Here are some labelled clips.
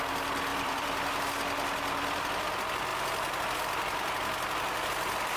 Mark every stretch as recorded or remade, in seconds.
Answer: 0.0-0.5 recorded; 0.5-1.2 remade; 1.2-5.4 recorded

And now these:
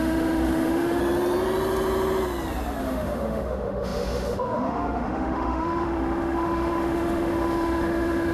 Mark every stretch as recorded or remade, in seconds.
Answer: 0.0-1.0 remade; 1.0-2.8 recorded; 2.8-8.3 remade

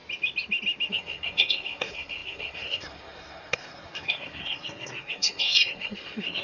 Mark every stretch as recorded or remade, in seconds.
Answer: 0.0-0.9 recorded; 0.9-6.4 remade

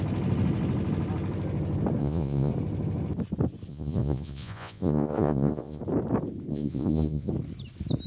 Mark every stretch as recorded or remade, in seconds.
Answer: 0.0-2.0 recorded; 2.0-2.5 remade; 2.5-3.7 recorded; 3.7-5.8 remade; 5.8-6.5 recorded; 6.5-7.3 remade; 7.3-8.1 recorded

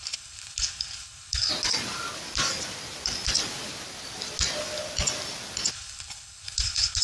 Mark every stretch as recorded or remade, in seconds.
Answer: 0.0-1.5 remade; 1.5-5.7 recorded; 5.7-7.0 remade

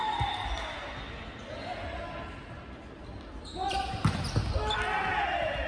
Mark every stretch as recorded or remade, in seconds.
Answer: 0.0-5.7 recorded